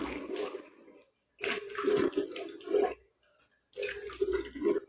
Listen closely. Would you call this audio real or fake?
real